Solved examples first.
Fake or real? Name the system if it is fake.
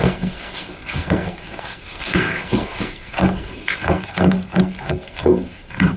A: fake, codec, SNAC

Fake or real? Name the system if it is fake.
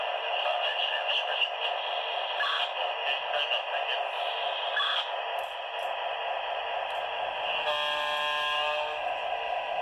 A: real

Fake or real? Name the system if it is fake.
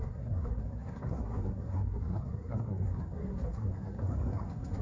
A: fake, codec, SNAC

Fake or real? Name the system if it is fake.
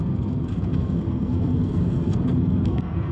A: fake, codec, SNAC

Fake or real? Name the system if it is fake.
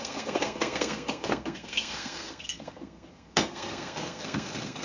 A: fake, codec, SNAC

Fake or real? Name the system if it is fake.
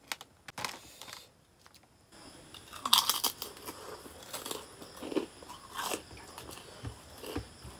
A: real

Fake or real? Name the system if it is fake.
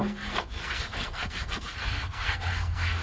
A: fake, codec, SNAC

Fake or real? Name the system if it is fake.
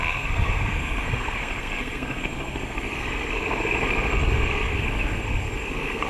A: fake, codec, SNAC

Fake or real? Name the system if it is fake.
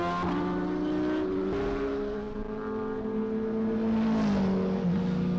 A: real